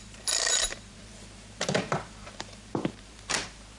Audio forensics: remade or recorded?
remade